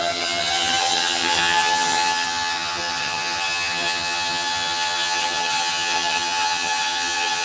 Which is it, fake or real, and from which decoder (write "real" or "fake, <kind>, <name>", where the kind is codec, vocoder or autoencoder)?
fake, vocoder, HiFi-GAN